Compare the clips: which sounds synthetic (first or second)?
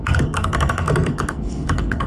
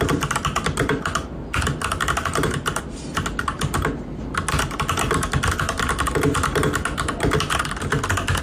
first